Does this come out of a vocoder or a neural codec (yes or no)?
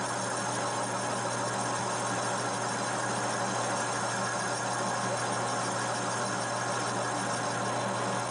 no